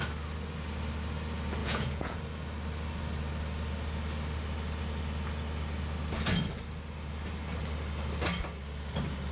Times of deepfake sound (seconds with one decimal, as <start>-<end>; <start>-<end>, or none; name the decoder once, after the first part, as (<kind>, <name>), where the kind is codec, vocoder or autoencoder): 1.6-2.2 (vocoder, Vocos)